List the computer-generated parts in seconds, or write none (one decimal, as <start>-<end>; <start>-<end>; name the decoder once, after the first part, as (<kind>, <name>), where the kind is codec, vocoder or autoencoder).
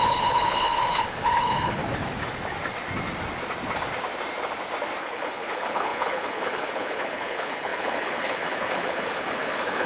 0.0-1.8 (codec, HILCodec); 5.0-9.9